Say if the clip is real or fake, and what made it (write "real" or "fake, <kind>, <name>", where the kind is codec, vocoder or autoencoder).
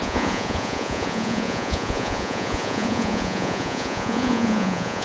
fake, vocoder, Vocos